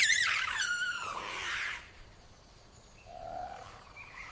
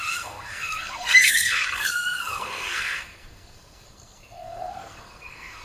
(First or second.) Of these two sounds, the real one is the first